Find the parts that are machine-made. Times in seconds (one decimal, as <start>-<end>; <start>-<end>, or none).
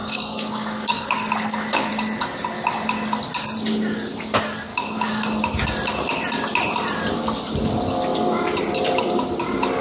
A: 0.0-1.9; 4.7-5.4